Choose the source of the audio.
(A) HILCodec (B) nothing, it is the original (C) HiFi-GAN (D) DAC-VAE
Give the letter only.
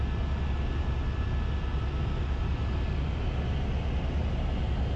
B